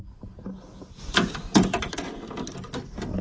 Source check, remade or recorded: recorded